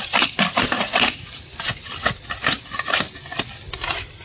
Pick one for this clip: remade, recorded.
recorded